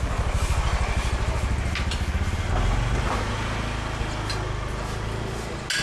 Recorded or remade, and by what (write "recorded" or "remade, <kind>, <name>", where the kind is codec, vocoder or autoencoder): recorded